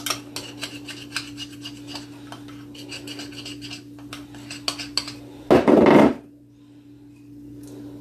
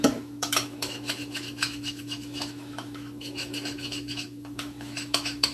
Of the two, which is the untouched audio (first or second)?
first